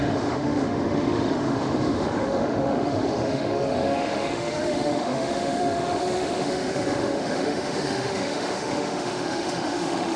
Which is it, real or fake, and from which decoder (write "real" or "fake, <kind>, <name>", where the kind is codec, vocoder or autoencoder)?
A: fake, autoencoder, DAC-VAE